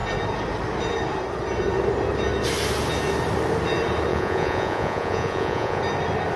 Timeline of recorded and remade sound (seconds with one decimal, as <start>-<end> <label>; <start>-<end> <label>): 0.0-4.1 recorded; 4.1-5.8 remade; 5.8-6.4 recorded